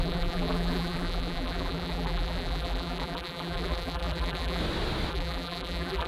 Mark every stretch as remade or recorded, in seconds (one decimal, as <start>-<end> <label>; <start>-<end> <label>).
0.0-4.6 remade; 4.6-5.1 recorded; 5.1-6.1 remade